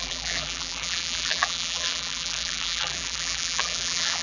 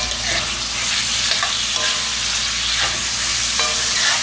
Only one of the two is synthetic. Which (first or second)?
first